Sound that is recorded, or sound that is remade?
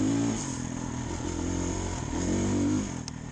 recorded